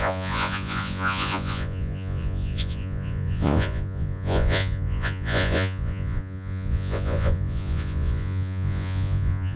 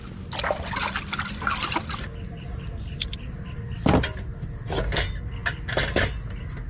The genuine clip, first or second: second